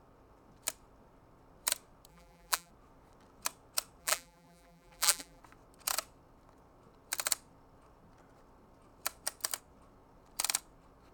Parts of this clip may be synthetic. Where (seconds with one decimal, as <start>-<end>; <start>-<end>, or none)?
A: 2.1-2.7; 4.0-5.4